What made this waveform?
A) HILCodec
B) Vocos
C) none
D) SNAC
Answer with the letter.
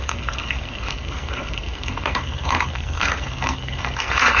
D